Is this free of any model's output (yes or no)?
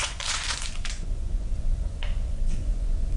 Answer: no